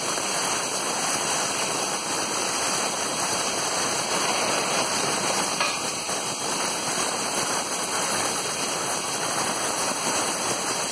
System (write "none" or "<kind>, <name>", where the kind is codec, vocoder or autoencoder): vocoder, BigVGAN v2